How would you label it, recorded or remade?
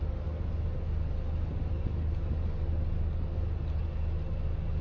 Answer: recorded